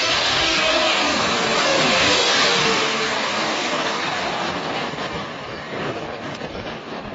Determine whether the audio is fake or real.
fake